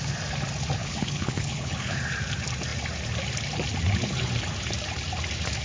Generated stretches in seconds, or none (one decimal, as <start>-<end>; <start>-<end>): 0.8-2.0